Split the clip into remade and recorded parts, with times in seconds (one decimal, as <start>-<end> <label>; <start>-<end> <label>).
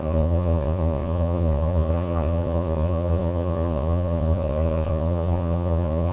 0.0-6.1 remade